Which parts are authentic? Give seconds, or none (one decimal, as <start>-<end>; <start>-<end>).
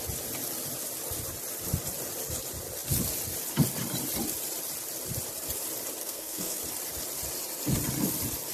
0.0-6.0; 6.6-8.5